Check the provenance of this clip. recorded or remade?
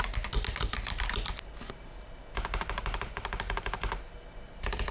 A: recorded